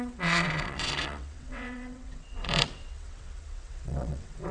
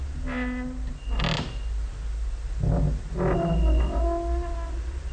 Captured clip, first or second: second